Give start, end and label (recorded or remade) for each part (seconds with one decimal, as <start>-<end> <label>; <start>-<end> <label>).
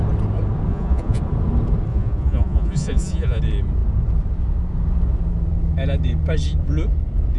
0.0-0.7 recorded; 0.7-1.2 remade; 1.2-1.9 recorded; 1.9-3.4 remade; 3.4-7.4 recorded